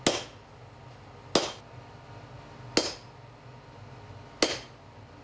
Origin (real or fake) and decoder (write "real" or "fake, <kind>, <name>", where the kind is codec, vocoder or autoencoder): real